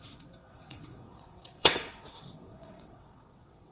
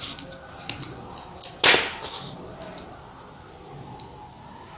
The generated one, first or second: first